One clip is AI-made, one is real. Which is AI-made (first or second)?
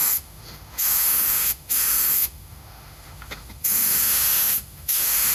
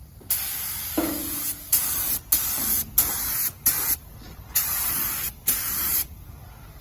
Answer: first